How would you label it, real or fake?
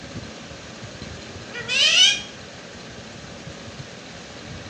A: real